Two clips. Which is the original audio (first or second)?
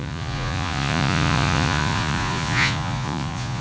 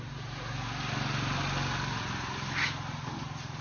second